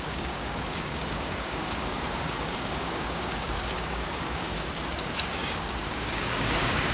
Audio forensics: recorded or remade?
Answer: remade